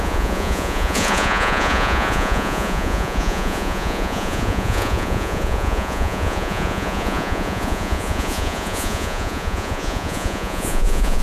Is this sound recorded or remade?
remade